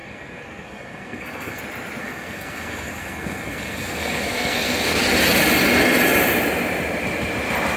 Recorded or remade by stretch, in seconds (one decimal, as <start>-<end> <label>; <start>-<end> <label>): 0.0-1.6 remade; 1.6-2.0 recorded; 2.0-5.0 remade; 5.0-7.8 recorded